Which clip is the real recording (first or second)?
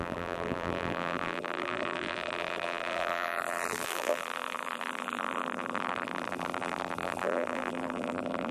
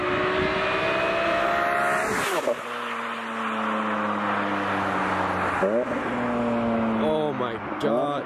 second